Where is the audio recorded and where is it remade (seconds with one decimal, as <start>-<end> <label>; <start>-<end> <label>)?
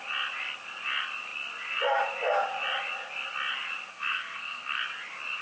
0.0-3.9 recorded; 3.9-4.8 remade; 4.8-5.4 recorded